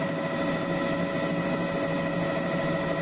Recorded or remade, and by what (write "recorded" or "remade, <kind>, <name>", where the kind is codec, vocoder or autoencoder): recorded